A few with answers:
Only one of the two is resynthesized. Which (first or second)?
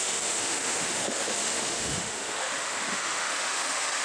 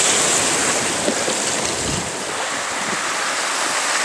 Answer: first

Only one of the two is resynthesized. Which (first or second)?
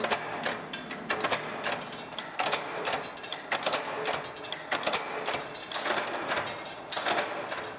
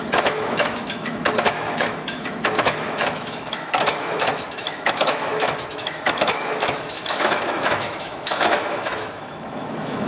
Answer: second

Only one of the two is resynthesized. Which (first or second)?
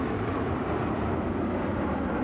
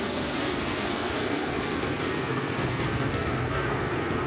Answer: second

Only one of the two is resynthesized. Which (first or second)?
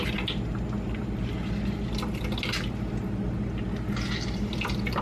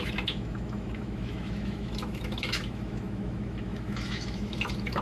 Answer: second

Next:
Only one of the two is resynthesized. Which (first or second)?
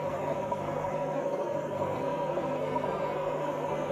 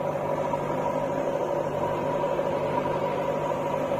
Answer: first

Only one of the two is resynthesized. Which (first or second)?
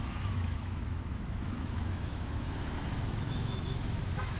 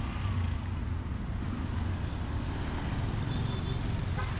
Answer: first